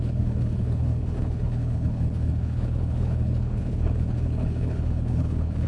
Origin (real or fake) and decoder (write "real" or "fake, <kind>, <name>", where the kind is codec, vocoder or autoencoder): fake, codec, HILCodec